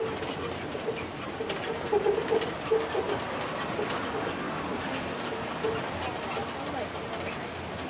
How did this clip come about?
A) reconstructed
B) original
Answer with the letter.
B